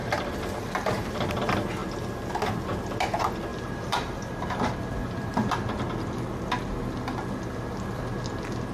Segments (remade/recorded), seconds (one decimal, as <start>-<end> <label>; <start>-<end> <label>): 0.0-1.2 remade; 1.2-3.5 recorded; 3.5-4.2 remade; 4.2-5.0 recorded; 5.0-5.5 remade; 5.5-8.7 recorded